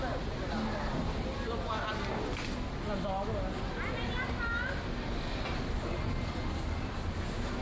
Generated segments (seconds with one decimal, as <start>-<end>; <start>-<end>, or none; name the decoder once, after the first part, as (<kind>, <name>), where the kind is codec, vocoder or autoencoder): none